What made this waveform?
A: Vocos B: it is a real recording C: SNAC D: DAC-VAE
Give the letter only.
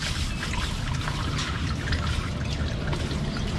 B